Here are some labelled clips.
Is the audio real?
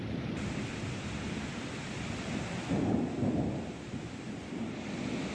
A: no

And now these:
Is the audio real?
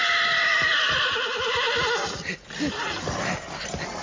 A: yes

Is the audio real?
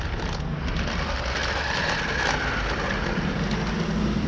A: yes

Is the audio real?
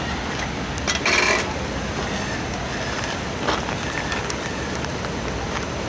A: yes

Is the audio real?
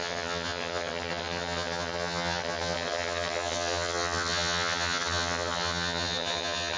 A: no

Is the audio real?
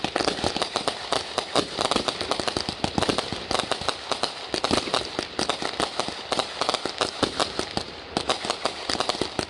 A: yes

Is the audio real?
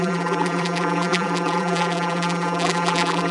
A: no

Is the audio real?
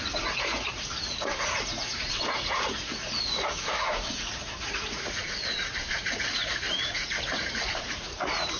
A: no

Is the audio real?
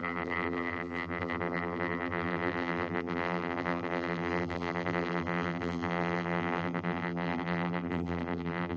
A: no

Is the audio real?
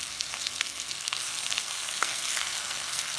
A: no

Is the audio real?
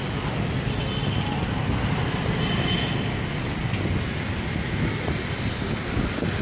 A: yes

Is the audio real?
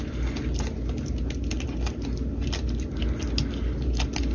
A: yes